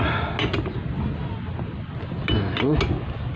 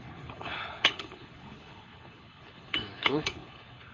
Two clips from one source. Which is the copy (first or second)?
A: second